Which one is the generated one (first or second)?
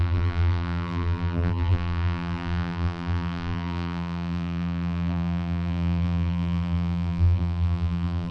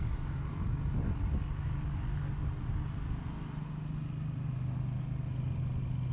first